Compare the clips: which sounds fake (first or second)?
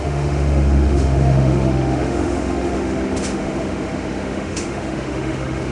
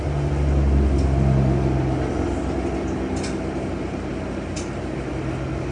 first